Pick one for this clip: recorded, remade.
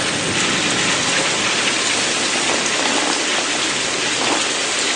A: recorded